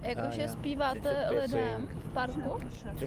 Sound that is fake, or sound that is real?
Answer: real